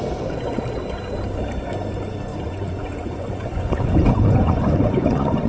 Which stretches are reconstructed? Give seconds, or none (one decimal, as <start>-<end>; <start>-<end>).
2.3-5.5